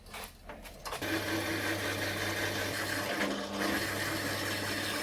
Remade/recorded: recorded